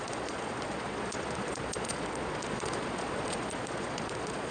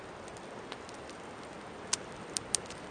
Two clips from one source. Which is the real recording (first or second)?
second